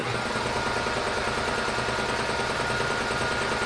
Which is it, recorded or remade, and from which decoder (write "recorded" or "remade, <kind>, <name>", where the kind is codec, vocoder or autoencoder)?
recorded